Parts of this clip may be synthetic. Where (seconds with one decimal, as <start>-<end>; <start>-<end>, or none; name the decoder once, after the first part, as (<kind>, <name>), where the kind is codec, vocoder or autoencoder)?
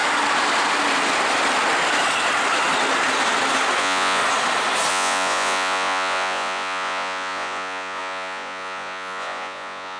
3.8-4.2 (vocoder, Vocos); 4.9-10.0